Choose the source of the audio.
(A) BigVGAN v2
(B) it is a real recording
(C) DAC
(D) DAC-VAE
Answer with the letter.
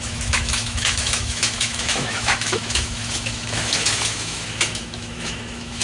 D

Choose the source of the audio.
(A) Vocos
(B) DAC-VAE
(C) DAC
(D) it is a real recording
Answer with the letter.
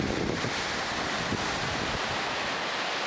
D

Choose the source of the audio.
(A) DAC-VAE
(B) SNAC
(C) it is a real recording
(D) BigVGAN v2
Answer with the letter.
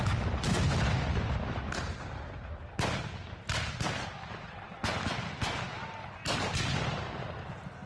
C